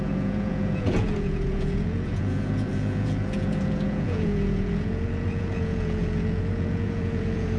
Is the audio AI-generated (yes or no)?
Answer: yes